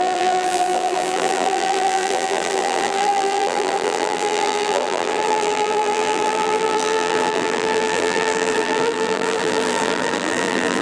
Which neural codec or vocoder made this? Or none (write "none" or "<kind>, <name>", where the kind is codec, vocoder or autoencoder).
vocoder, BigVGAN v2